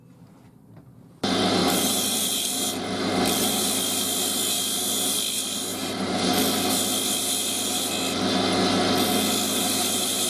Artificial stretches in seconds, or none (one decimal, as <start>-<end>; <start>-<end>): 1.6-2.6; 5.7-6.3